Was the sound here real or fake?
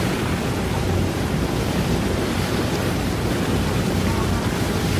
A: fake